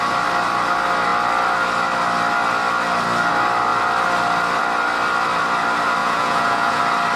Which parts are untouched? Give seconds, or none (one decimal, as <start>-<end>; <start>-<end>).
0.0-6.0; 6.8-7.2